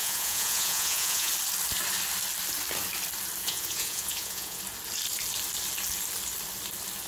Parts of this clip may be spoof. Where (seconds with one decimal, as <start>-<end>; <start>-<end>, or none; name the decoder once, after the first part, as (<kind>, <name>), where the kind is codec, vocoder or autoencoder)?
0.0-1.3 (vocoder, Vocos); 3.4-4.6